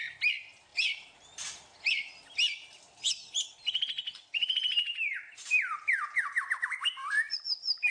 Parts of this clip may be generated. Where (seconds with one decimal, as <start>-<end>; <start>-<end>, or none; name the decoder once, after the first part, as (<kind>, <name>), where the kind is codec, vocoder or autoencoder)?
4.7-5.8 (vocoder, BigVGAN v2)